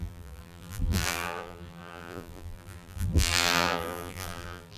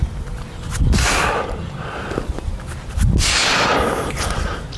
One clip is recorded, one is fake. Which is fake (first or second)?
first